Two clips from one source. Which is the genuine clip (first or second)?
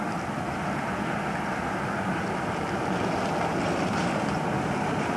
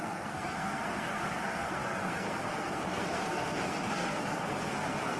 first